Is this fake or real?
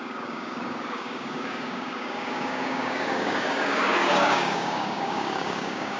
fake